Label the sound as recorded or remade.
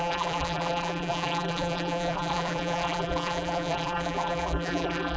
remade